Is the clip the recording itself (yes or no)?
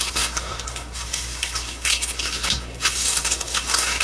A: no